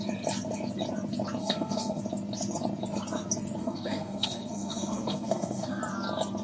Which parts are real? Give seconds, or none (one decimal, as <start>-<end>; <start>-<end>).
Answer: 0.0-1.4; 2.0-3.6; 5.8-6.4